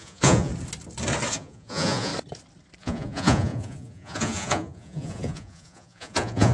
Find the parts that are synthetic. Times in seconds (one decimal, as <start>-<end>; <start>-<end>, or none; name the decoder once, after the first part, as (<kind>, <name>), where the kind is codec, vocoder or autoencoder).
0.0-0.5 (vocoder, Vocos); 1.3-2.1; 2.8-6.5